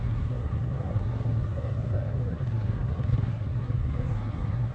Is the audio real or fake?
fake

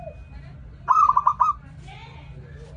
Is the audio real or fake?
real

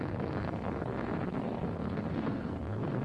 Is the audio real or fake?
fake